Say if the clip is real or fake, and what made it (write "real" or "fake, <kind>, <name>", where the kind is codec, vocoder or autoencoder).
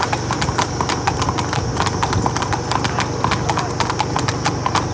real